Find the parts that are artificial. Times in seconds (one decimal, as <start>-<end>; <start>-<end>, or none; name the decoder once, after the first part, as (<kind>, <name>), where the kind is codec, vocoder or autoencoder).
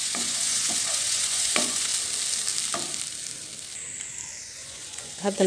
0.0-1.9 (vocoder, Vocos); 4.4-5.5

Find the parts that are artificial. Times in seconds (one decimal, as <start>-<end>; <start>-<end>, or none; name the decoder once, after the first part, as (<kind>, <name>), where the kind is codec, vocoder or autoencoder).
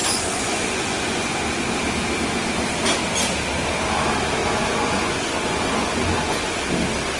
0.0-1.6 (vocoder, Vocos); 4.4-6.6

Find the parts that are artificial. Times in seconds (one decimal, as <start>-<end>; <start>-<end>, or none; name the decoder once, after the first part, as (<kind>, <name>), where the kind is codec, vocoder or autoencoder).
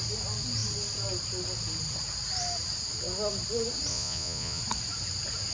3.9-4.6 (vocoder, Vocos)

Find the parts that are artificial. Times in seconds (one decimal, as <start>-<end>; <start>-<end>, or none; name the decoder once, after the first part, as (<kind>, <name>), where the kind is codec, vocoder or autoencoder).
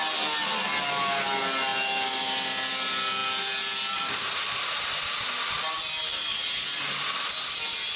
none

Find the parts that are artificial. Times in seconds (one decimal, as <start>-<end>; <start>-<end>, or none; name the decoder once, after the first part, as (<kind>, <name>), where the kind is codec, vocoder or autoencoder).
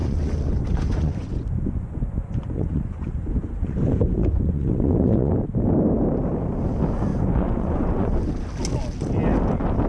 0.0-5.3 (vocoder, Vocos); 7.1-8.2